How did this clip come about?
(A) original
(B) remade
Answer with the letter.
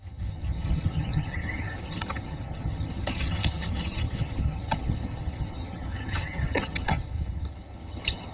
B